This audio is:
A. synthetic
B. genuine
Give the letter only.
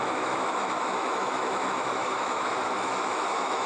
A